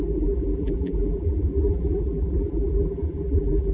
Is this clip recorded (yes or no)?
no